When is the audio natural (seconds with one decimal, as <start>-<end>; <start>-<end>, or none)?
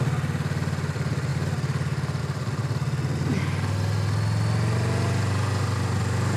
0.0-6.4